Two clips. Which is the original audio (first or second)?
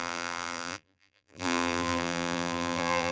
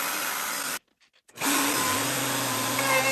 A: second